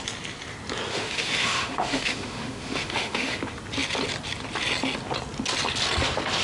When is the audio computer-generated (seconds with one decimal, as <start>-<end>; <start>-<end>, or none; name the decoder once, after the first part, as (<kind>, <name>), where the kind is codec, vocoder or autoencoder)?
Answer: 0.9-3.4 (autoencoder, DAC-VAE)